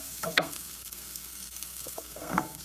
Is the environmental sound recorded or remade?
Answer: remade